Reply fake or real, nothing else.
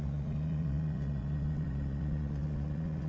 fake